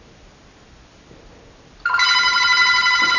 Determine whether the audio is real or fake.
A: real